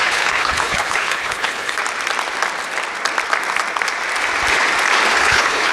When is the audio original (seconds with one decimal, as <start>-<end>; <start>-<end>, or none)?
1.8-5.2